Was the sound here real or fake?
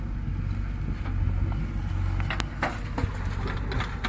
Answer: real